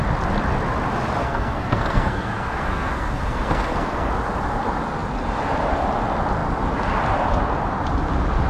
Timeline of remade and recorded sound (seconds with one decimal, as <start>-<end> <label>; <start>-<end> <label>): 0.0-1.2 recorded; 1.2-4.1 remade; 4.1-8.5 recorded